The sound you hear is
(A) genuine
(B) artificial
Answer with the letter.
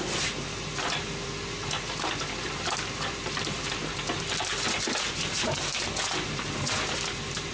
A